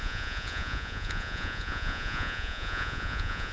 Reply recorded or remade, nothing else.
remade